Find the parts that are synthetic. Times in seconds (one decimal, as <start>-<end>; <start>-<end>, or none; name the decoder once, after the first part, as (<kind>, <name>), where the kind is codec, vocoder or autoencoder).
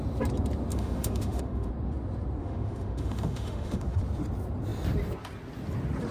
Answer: 0.7-1.7 (autoencoder, DAC-VAE); 2.4-4.0